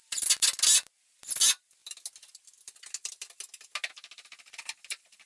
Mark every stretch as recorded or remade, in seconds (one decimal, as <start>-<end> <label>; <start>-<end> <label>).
0.0-5.3 recorded

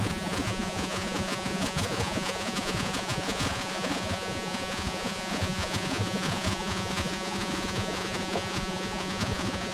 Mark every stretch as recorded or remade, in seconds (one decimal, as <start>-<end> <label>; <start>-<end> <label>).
0.0-9.7 remade